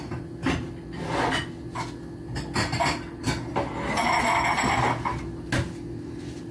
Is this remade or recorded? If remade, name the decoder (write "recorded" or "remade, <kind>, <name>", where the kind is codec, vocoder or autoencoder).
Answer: recorded